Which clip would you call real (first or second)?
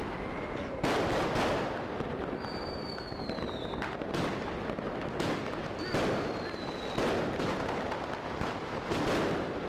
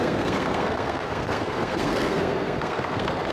first